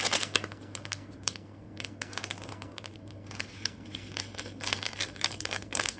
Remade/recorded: remade